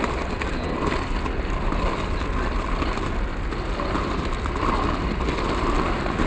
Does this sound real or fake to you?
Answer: real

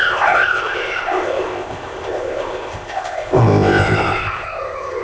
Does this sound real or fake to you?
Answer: fake